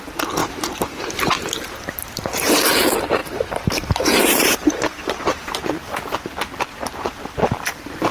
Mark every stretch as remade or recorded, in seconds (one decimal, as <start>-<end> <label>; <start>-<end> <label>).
0.0-0.4 recorded; 0.4-2.6 remade; 2.6-3.2 recorded; 3.2-5.7 remade; 5.7-8.1 recorded